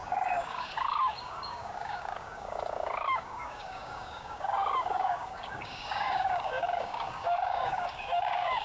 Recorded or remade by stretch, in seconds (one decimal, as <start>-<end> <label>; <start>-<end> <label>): 0.0-8.6 remade

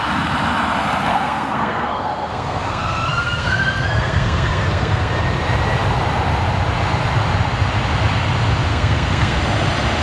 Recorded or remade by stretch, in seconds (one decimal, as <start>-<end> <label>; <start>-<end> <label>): 0.0-1.1 recorded; 1.1-5.1 remade; 5.1-8.7 recorded; 8.7-9.4 remade; 9.4-10.0 recorded

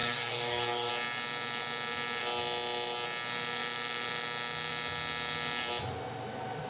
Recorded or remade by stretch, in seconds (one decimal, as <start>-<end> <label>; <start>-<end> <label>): 0.0-0.9 remade; 0.9-6.7 recorded

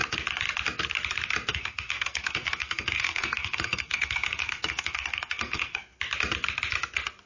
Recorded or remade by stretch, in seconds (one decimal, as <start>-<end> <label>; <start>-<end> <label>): 0.0-1.5 recorded; 1.5-5.8 remade; 5.8-7.3 recorded